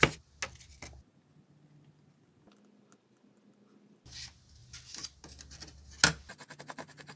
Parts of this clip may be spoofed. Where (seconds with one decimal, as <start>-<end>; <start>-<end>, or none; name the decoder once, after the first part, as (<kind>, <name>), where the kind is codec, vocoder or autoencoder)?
none